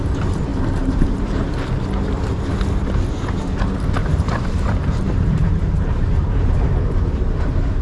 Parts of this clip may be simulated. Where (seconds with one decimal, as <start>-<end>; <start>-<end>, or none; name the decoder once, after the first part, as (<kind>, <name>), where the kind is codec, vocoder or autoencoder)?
0.5-1.5 (vocoder, BigVGAN v2); 4.0-6.7